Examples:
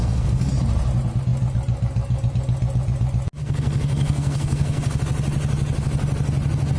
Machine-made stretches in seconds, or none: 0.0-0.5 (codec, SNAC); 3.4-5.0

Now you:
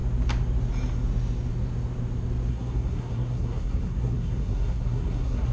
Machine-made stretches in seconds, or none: 2.5-5.5 (codec, SNAC)

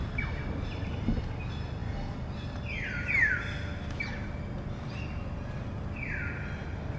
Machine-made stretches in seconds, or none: none

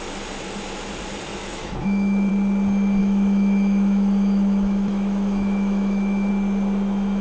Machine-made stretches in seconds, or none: 1.3-2.3 (autoencoder, DAC-VAE); 3.0-6.3

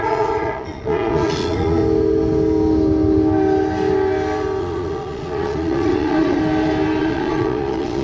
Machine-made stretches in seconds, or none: 0.0-1.8 (vocoder, Vocos); 4.6-6.4; 7.0-8.0

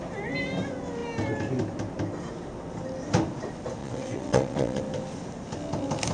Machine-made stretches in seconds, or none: 3.8-4.8 (vocoder, WaveNeXt)